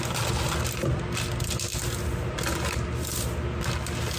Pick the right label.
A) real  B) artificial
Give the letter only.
A